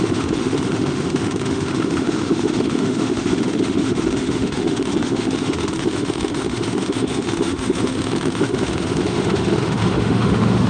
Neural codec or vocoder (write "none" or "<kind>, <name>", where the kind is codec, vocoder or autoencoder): autoencoder, DAC-VAE